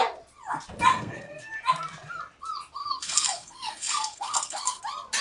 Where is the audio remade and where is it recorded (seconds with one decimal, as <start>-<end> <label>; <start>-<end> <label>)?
0.0-0.9 recorded; 0.9-1.5 remade; 1.5-2.8 recorded; 2.8-4.8 remade; 4.8-5.2 recorded